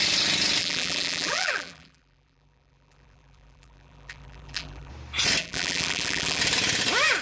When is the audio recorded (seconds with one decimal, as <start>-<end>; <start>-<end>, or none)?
0.0-0.6; 4.9-5.4; 6.4-7.2